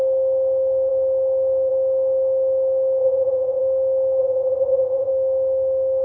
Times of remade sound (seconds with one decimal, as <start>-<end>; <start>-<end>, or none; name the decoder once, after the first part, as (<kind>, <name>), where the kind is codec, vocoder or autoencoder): 3.0-3.6 (vocoder, Vocos); 4.2-5.1